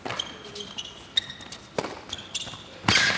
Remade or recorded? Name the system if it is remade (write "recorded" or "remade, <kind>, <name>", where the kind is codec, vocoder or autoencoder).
recorded